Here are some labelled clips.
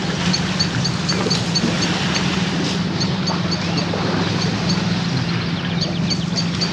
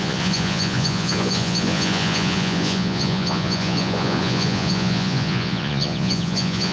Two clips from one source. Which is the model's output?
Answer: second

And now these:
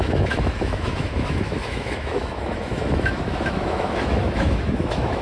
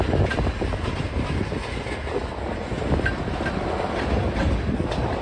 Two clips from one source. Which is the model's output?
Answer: first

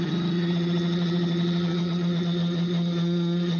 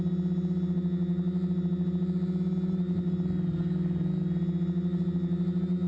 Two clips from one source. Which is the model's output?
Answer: first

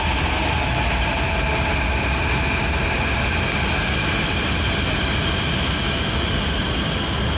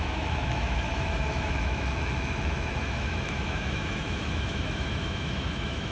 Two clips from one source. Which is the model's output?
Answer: second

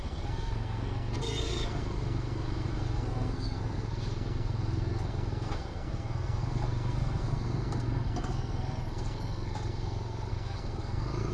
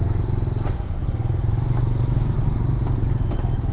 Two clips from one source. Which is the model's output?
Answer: first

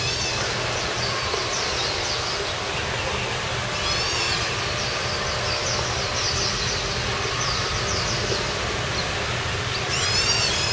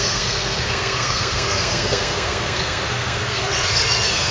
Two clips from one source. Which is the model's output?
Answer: second